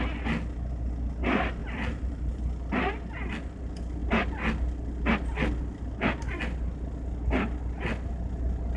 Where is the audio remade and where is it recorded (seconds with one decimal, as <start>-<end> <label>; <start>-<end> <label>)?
0.0-1.6 recorded; 1.6-2.4 remade; 2.4-8.8 recorded